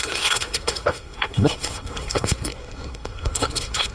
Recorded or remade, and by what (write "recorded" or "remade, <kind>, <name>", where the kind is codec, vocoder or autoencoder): remade, codec, SNAC